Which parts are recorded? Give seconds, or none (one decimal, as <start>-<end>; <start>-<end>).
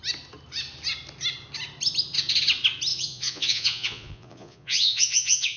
0.0-2.9